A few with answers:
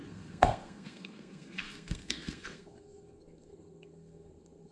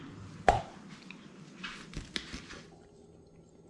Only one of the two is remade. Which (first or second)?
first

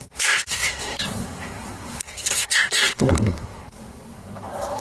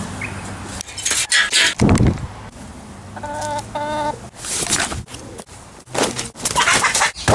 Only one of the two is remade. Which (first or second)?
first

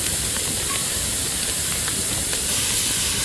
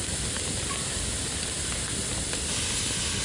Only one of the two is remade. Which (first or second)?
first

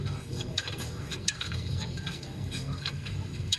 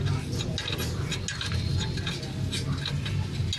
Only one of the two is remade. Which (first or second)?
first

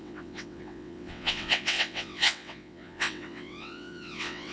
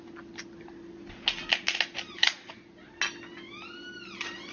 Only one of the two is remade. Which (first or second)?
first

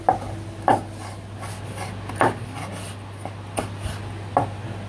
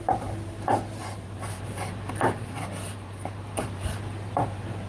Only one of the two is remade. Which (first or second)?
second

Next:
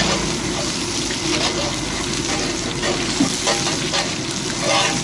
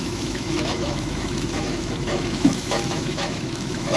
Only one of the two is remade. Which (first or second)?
second